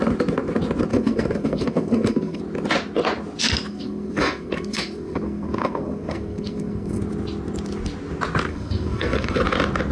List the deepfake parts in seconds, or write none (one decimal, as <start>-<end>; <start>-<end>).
0.9-2.4; 3.7-7.0; 8.5-9.4

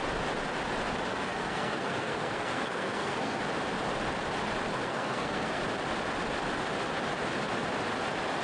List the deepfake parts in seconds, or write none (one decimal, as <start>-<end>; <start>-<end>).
1.1-3.4; 4.7-5.6

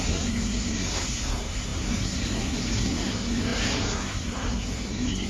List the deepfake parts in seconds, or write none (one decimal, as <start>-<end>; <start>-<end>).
0.0-5.3

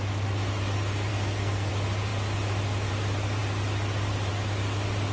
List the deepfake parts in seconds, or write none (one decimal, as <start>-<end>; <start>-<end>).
1.1-1.7